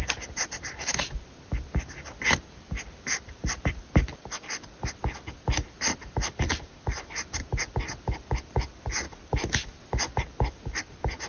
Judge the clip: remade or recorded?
recorded